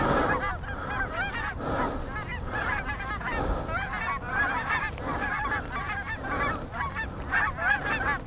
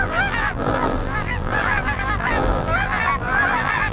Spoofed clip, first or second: second